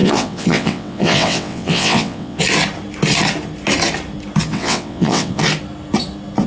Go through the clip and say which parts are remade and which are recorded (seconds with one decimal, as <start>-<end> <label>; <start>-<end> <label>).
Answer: 0.0-2.4 remade; 2.4-4.5 recorded; 4.5-5.4 remade; 5.4-6.5 recorded